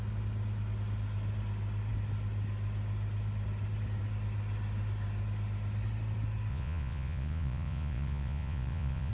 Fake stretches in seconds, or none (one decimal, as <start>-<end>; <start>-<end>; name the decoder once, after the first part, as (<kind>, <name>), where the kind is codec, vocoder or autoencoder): 6.5-9.1 (vocoder, Vocos)